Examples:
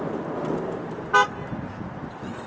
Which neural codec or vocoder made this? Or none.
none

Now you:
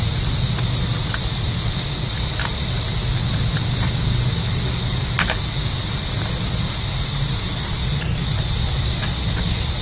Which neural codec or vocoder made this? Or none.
none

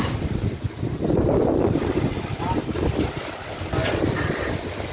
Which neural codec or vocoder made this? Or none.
none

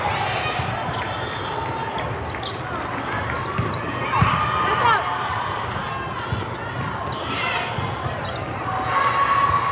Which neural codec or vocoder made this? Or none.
none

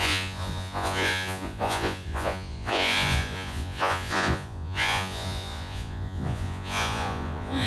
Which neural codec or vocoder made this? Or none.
vocoder, Vocos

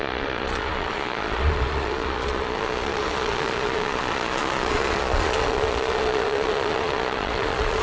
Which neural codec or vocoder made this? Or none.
vocoder, Vocos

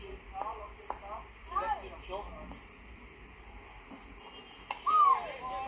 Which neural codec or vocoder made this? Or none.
none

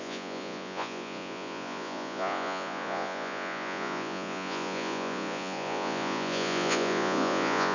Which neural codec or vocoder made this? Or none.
vocoder, Vocos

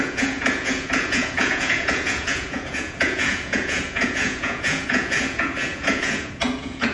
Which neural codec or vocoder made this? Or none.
vocoder, Vocos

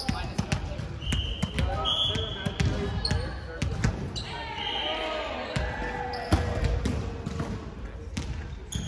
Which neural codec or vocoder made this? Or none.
none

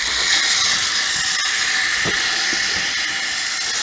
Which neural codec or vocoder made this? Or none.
none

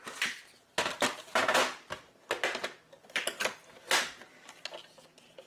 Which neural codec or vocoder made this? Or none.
none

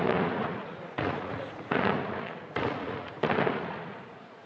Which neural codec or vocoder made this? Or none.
vocoder, Vocos